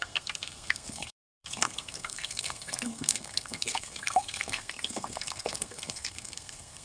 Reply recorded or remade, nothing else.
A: remade